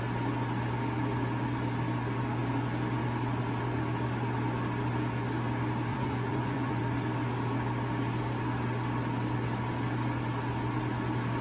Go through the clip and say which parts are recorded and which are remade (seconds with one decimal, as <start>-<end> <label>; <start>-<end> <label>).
0.0-5.9 recorded; 5.9-6.8 remade; 6.8-11.4 recorded